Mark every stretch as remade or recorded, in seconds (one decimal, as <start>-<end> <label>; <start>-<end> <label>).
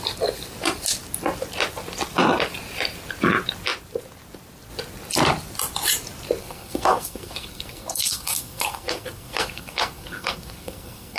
0.0-6.4 recorded; 6.4-11.2 remade